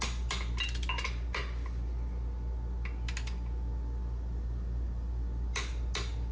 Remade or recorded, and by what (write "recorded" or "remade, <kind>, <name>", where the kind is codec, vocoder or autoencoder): recorded